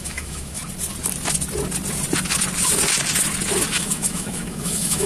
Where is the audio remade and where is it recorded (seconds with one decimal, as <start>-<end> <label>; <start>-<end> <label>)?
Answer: 0.0-0.6 remade; 0.6-3.7 recorded; 3.7-5.1 remade